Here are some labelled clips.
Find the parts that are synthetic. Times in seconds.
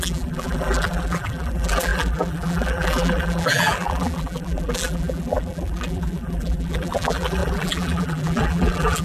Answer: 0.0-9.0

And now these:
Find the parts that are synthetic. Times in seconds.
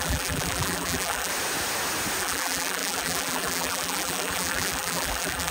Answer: 0.0-1.3; 2.2-5.5